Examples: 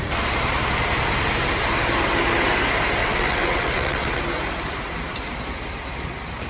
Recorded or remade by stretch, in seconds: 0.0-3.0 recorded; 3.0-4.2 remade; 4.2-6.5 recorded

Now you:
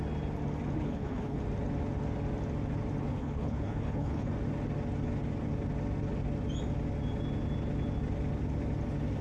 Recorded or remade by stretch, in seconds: 0.0-0.8 recorded; 0.8-1.4 remade; 1.4-3.1 recorded; 3.1-4.3 remade; 4.3-9.2 recorded

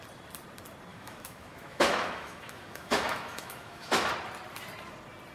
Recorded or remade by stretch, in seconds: 0.0-0.9 recorded; 0.9-4.1 remade; 4.1-5.3 recorded

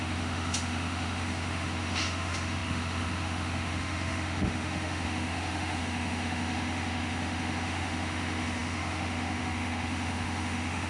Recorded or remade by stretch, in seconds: 0.0-10.9 remade

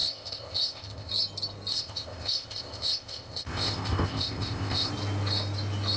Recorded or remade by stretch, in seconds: 0.0-1.1 remade; 1.1-1.7 recorded; 1.7-4.9 remade; 4.9-6.0 recorded